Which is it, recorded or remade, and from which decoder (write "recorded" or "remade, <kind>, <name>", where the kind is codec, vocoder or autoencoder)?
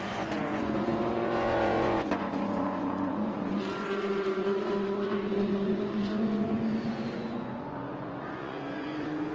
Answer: remade, vocoder, Vocos